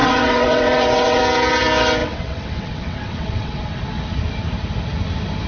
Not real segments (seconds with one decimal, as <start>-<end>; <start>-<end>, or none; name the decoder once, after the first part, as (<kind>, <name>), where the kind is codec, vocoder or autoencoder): 0.0-1.2 (vocoder, WaveNeXt); 2.0-3.8